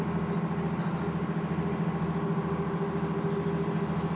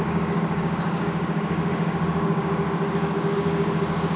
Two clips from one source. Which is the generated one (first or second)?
second